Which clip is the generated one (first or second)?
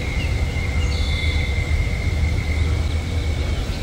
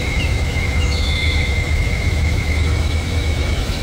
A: second